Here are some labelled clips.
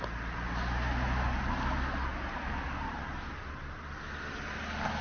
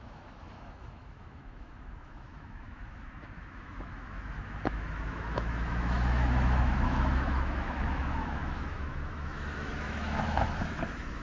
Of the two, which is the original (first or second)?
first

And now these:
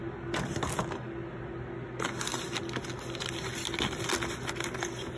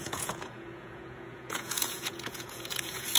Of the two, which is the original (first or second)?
first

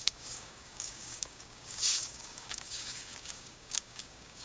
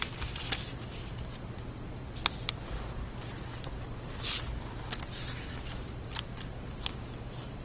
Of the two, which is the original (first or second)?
second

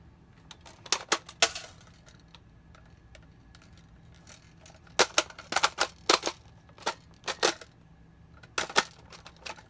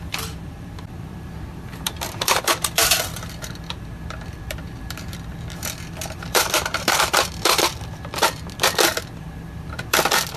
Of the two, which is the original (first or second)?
first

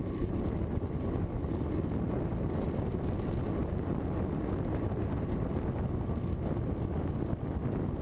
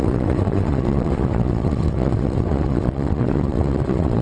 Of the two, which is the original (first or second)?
first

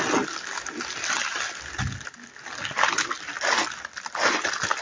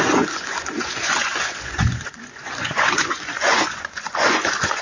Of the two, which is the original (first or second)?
first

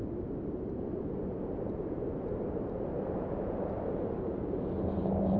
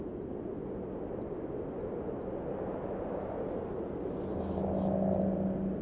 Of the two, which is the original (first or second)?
second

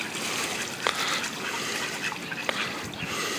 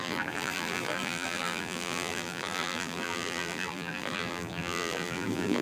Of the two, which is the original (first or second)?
first